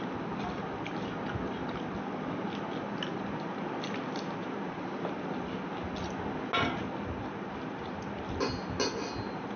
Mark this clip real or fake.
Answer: real